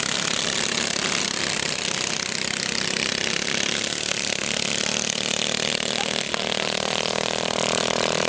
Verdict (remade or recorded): recorded